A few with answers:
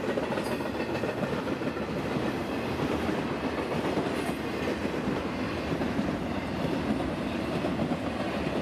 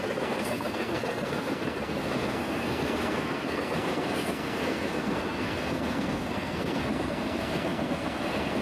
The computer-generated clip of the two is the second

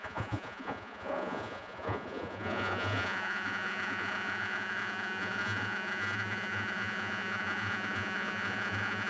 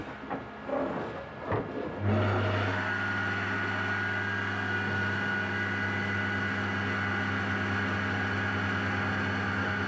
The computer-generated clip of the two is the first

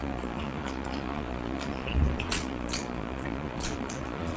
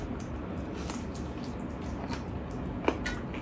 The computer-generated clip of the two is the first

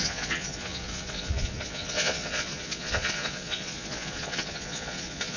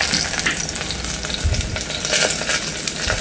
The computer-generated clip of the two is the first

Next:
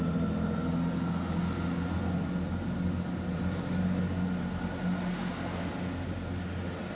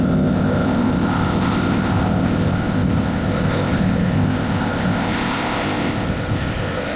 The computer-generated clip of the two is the second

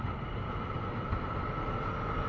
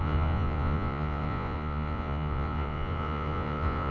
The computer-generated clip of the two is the second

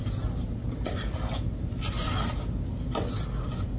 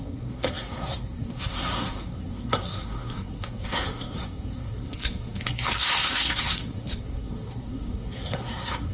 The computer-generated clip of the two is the second